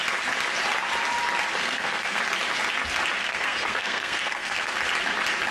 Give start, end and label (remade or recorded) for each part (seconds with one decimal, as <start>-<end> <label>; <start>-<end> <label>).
0.0-1.6 recorded; 1.6-2.2 remade; 2.2-3.2 recorded; 3.2-4.8 remade; 4.8-5.5 recorded